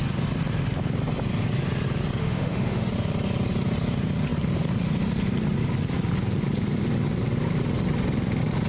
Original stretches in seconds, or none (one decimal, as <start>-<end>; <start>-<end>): 0.0-2.2; 2.9-8.7